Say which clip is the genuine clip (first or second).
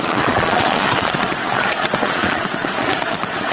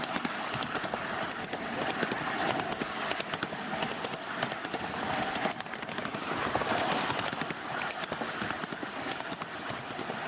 second